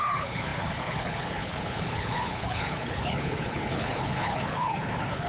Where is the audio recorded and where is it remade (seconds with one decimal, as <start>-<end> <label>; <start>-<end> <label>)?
0.0-5.3 remade